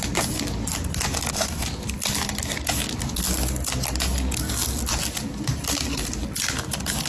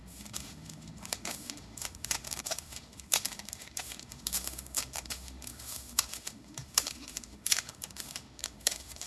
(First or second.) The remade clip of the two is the second